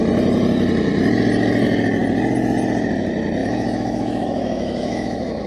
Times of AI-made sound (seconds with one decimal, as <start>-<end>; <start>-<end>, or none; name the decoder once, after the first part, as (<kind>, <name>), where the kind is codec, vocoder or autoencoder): 3.4-5.5 (autoencoder, DAC-VAE)